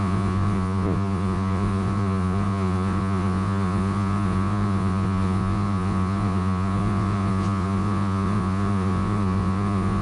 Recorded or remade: remade